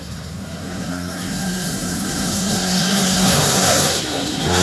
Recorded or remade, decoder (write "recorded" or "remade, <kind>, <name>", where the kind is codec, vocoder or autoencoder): remade, codec, SNAC